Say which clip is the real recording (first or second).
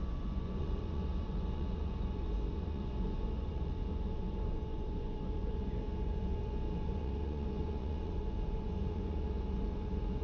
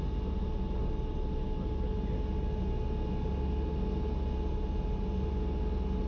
second